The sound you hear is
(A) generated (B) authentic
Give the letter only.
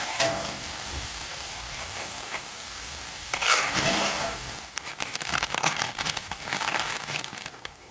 A